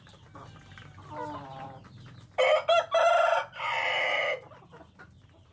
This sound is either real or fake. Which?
real